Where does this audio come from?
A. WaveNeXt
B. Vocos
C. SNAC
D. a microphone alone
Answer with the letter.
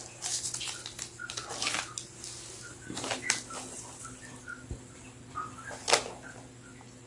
D